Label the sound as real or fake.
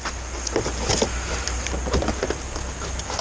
real